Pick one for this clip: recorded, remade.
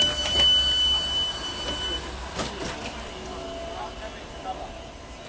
recorded